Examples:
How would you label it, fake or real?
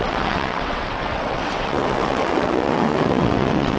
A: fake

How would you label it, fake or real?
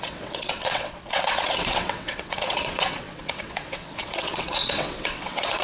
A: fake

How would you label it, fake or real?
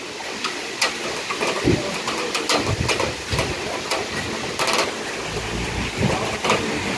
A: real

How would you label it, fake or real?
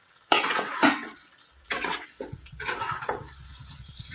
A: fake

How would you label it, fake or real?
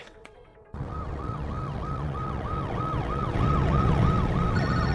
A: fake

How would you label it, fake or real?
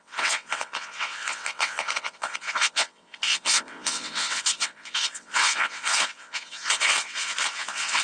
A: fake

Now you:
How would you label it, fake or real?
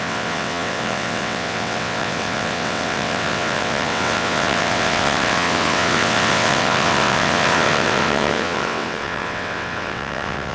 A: fake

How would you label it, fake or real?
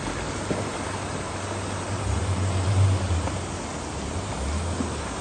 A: real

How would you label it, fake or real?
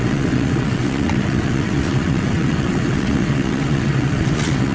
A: fake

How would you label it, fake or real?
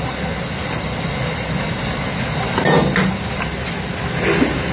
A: real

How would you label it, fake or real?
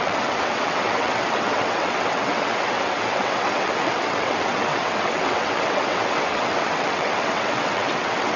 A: fake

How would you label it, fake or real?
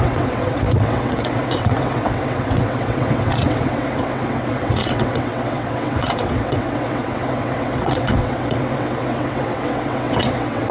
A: fake